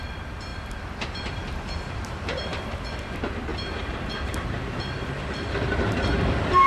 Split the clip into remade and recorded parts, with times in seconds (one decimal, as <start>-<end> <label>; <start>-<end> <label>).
0.0-0.5 recorded; 0.5-2.6 remade; 2.6-3.5 recorded; 3.5-6.1 remade; 6.1-6.7 recorded